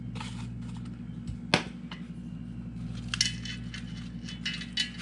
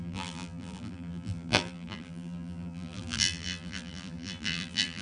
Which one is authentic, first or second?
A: first